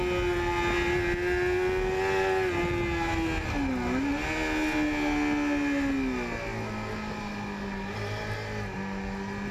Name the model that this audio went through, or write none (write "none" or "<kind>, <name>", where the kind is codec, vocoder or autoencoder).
none